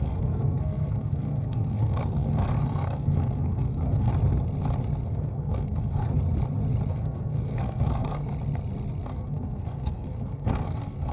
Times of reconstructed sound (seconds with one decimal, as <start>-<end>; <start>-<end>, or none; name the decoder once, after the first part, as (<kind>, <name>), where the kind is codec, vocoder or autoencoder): 0.0-4.1 (codec, SNAC); 5.1-6.1; 6.9-8.3; 9.1-11.1